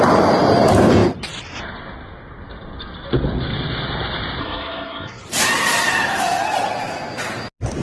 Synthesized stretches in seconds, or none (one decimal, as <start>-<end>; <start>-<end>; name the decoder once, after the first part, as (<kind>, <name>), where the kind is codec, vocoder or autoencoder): 4.4-5.3 (codec, SNAC)